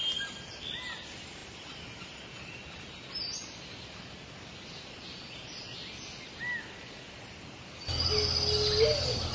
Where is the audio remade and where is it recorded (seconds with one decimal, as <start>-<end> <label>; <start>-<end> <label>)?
0.0-9.3 recorded